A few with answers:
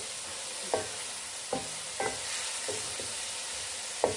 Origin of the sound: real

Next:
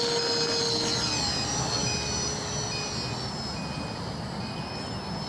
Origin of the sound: real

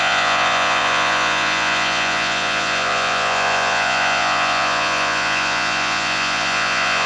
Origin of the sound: fake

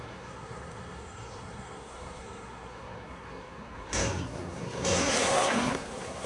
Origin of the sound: fake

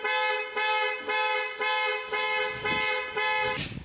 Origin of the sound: real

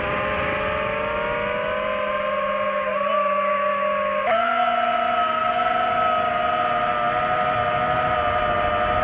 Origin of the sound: real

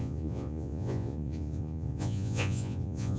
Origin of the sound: fake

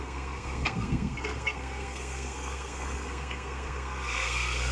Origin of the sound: fake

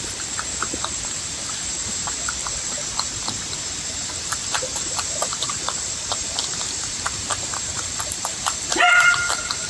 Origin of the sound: fake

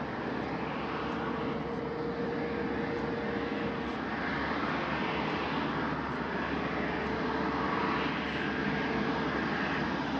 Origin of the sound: real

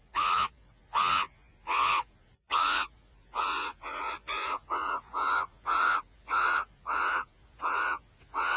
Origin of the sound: fake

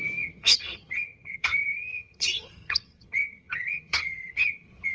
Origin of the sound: fake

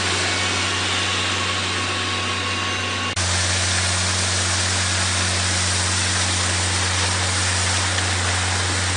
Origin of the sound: real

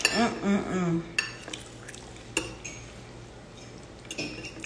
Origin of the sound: real